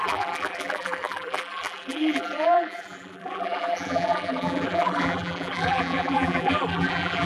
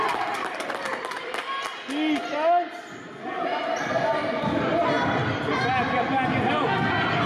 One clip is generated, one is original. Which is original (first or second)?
second